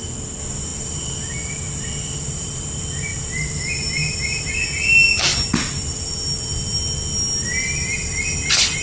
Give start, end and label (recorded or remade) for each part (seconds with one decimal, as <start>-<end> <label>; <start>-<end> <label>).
0.0-8.8 recorded